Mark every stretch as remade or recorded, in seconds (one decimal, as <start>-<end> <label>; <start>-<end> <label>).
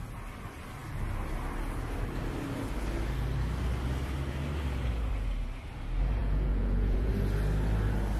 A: 0.0-6.2 recorded; 6.2-7.1 remade; 7.1-8.2 recorded